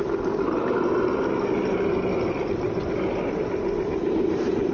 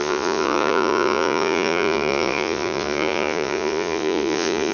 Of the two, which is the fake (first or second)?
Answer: second